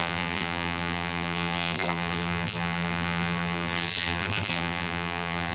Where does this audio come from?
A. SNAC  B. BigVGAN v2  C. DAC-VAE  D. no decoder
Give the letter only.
B